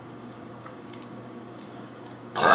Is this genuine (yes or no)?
no